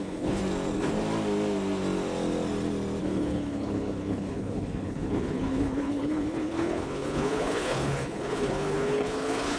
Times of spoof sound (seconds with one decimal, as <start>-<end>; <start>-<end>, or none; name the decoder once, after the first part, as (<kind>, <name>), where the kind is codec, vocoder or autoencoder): 0.0-0.4 (codec, HILCodec); 3.0-9.6